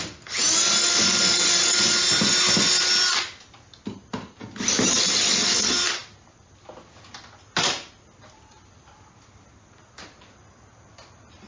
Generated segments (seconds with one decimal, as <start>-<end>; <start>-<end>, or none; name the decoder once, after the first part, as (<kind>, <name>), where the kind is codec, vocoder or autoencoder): none